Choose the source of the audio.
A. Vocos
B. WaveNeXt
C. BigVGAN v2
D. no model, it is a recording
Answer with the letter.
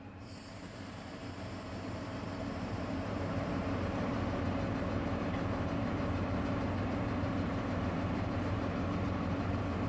C